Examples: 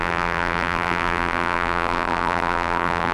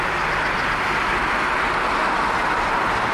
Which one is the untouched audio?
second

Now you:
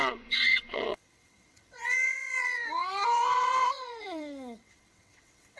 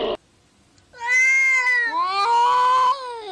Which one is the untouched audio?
second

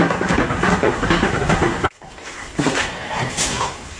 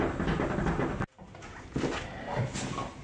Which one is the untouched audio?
second